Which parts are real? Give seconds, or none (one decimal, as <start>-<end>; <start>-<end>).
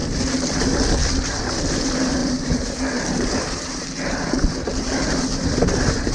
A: 0.0-2.2